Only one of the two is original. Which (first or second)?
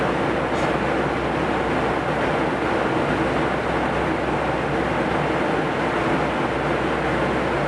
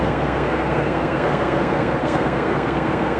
first